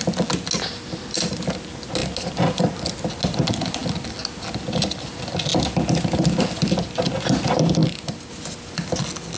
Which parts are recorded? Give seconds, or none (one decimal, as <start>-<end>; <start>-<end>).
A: 0.0-9.4